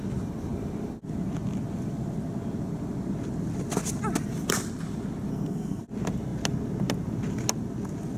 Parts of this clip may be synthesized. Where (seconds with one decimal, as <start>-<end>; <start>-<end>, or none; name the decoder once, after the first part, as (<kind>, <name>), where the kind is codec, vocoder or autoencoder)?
5.3-5.8 (codec, SNAC)